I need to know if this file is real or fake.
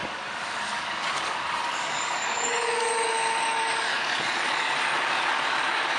fake